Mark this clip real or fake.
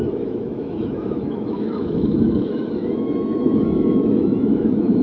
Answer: fake